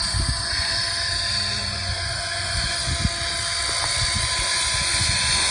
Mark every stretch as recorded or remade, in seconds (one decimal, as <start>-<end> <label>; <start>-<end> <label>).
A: 0.0-0.8 remade; 0.8-1.6 recorded; 1.6-2.9 remade; 2.9-4.2 recorded; 4.2-5.5 remade

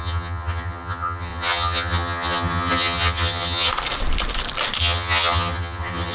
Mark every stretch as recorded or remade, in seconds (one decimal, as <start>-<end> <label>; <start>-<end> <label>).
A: 0.0-3.7 remade; 3.7-4.8 recorded; 4.8-6.1 remade

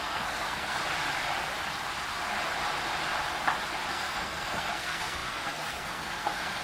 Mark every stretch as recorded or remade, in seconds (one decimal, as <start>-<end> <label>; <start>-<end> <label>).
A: 0.0-0.8 remade; 0.8-3.9 recorded; 3.9-6.6 remade

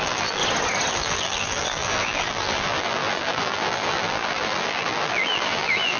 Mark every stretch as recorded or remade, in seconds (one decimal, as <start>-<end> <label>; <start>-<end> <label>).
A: 0.0-0.4 remade; 0.4-0.9 recorded; 0.9-6.0 remade

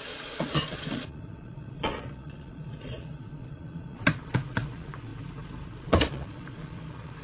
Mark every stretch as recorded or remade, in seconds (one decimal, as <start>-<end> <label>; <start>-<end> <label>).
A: 0.0-5.1 remade; 5.1-5.8 recorded; 5.8-7.2 remade

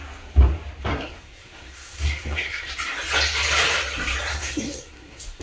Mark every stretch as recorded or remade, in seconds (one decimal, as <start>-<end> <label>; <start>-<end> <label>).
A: 0.0-0.9 recorded; 0.9-2.7 remade; 2.7-4.3 recorded; 4.3-5.4 remade

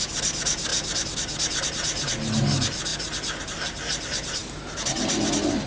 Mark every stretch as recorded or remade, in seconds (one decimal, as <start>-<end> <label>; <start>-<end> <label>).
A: 0.0-5.7 recorded

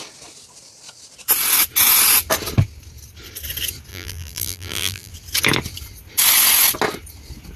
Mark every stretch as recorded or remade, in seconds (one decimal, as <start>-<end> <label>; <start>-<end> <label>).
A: 0.0-3.9 recorded; 3.9-5.1 remade; 5.1-7.6 recorded